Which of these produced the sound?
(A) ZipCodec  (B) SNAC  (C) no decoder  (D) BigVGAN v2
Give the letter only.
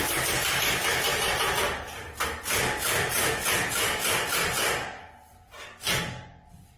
C